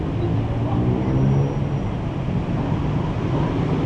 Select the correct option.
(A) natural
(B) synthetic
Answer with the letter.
A